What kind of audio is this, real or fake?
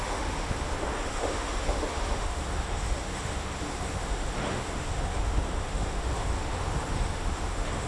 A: fake